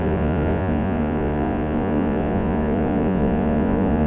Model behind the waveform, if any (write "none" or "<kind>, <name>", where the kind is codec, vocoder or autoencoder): vocoder, Vocos